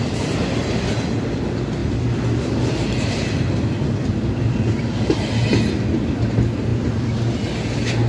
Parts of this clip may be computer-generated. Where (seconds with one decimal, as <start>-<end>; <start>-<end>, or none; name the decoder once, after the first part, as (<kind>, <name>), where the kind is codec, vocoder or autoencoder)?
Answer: none